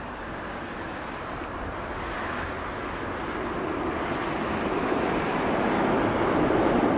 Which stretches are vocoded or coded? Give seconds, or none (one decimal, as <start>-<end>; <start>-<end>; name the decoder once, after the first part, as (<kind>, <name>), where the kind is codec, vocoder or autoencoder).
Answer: 0.0-4.2 (vocoder, BigVGAN v2); 5.1-7.0